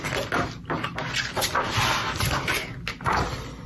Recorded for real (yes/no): yes